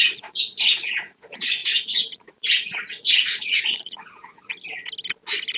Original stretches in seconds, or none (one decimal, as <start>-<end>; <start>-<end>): 4.5-5.6